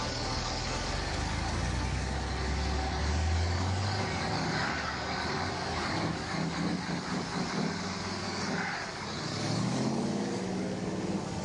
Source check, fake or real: fake